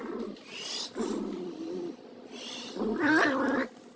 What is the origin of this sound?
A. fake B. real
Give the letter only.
B